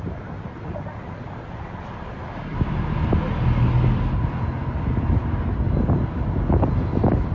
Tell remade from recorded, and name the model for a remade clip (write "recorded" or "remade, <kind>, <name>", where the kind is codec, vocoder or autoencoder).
recorded